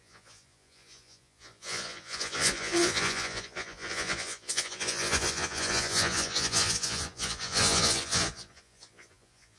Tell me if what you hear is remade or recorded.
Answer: remade